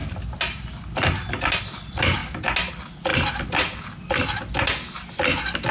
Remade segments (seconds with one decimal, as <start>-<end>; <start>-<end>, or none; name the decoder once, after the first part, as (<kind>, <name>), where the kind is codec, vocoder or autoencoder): none